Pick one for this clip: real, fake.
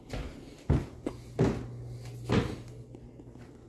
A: real